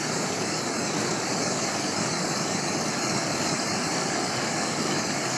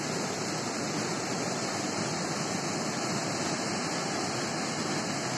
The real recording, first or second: second